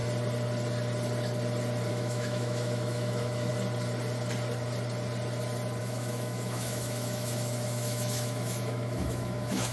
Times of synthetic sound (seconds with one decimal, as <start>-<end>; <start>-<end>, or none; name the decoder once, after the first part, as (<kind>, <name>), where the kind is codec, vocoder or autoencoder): 1.9-3.5 (autoencoder, DAC-VAE); 5.8-9.7